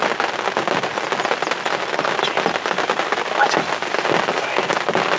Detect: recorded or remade recorded